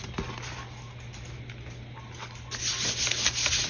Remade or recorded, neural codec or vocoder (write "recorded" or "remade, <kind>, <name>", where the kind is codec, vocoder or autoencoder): recorded